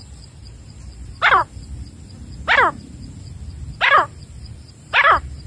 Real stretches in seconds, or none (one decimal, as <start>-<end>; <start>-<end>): 1.4-3.8